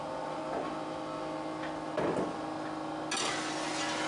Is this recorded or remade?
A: recorded